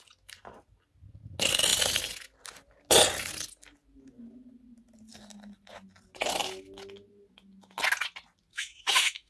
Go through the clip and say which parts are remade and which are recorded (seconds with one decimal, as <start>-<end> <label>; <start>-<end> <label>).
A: 0.0-8.5 recorded; 8.5-9.3 remade